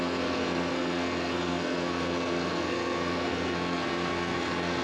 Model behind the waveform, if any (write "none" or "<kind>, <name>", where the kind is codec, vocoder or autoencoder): codec, SNAC